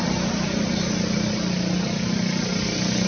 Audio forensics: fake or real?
real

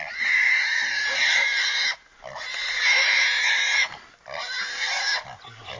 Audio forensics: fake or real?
real